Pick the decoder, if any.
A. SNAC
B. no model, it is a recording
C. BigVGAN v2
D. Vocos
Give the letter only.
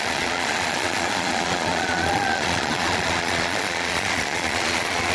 D